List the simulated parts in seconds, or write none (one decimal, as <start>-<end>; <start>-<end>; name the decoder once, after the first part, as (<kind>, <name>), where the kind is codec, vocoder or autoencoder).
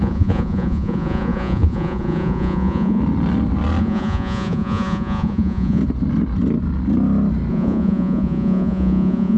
0.0-3.0 (vocoder, Vocos); 3.8-5.8; 7.5-9.4